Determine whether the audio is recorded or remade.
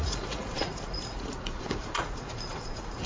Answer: remade